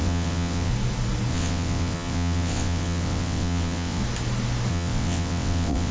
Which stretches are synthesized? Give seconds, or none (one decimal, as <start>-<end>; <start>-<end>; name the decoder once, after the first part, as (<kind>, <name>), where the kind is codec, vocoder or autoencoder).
0.0-0.7 (vocoder, WaveNeXt); 1.3-4.0; 4.7-5.9